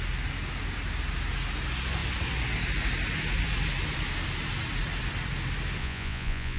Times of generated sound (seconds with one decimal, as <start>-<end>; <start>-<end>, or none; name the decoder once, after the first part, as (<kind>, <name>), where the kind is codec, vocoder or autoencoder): 5.8-6.6 (vocoder, Vocos)